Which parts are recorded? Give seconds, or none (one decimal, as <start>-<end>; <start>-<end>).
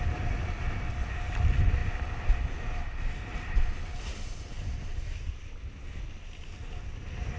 0.0-7.4